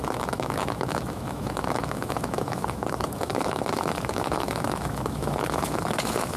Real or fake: fake